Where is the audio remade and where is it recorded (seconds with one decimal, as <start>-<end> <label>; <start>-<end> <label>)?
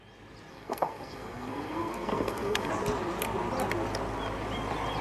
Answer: 0.0-0.5 recorded; 0.5-2.7 remade; 2.7-5.0 recorded